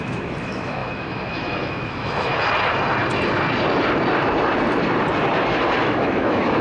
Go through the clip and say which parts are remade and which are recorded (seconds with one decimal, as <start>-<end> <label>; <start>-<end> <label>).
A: 0.0-2.3 remade; 2.3-5.8 recorded; 5.8-6.6 remade

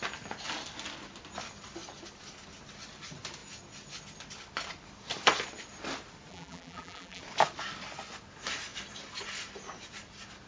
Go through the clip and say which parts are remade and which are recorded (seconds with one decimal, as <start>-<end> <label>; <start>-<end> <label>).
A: 0.0-6.3 recorded; 6.3-7.2 remade; 7.2-10.5 recorded

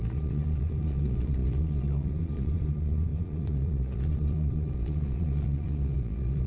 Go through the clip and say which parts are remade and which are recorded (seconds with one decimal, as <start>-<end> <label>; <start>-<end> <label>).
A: 0.0-6.5 remade